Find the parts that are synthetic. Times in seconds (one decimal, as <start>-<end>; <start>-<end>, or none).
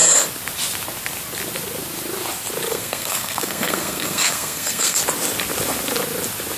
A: 2.7-5.0